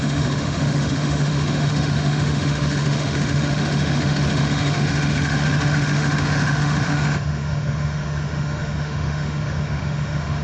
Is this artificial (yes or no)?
yes